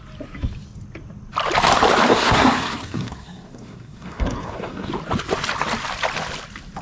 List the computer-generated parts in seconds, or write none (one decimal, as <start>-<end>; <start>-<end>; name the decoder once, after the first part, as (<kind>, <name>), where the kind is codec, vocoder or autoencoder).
2.1-4.9 (codec, SNAC)